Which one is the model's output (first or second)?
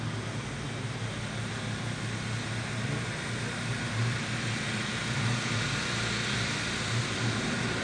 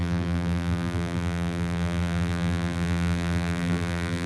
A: second